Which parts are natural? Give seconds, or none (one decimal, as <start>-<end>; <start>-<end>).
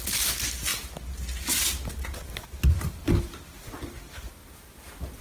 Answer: 0.0-5.2